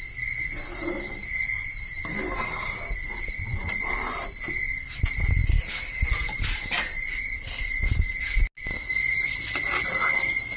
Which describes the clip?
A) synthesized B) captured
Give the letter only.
B